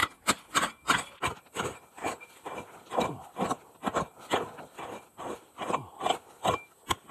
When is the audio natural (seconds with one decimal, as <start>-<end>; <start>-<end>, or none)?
0.0-7.1